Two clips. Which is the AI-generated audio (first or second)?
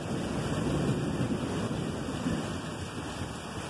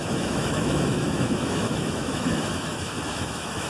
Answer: second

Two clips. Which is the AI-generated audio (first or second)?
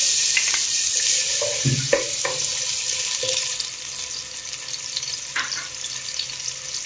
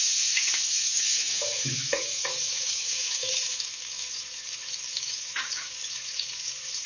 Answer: second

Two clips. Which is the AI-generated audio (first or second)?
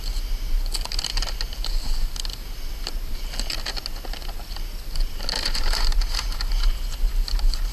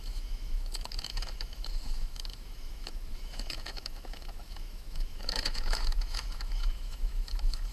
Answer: second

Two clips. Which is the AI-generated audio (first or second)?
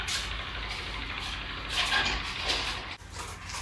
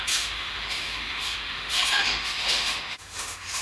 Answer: second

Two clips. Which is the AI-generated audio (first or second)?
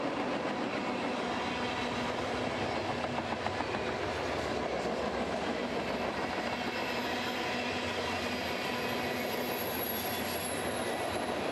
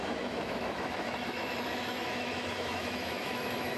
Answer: second